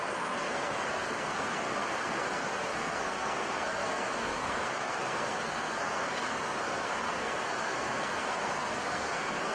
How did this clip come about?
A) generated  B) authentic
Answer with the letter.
A